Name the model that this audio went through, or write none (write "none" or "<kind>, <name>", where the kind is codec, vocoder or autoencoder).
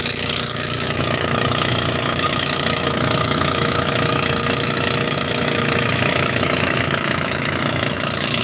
autoencoder, DAC-VAE